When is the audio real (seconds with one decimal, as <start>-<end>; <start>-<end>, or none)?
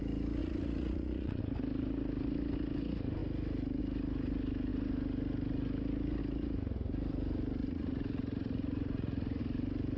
0.0-0.4; 1.4-7.6; 9.4-10.0